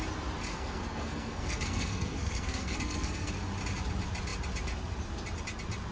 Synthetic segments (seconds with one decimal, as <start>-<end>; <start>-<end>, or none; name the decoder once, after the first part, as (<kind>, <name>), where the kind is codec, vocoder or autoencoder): 0.5-3.3 (codec, SNAC)